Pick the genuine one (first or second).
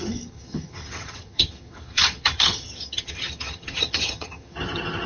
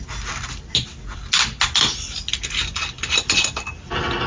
second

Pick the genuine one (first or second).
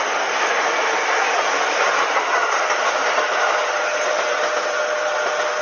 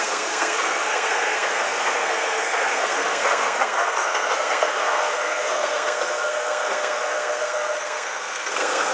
first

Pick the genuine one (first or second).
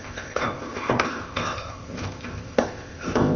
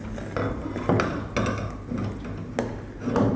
second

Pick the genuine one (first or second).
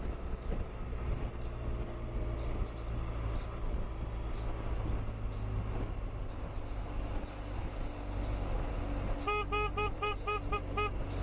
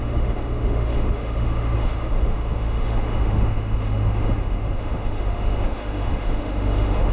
first